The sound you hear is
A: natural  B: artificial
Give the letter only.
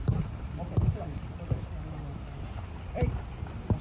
B